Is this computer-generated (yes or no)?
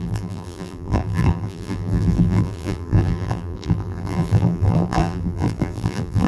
yes